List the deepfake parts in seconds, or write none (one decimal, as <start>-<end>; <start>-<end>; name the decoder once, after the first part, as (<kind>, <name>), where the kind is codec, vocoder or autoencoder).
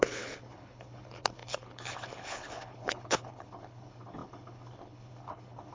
0.0-5.7 (codec, HILCodec)